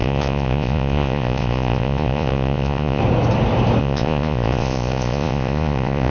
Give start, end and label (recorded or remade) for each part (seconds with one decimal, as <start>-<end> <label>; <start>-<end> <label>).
0.0-3.0 remade; 3.0-3.8 recorded; 3.8-6.1 remade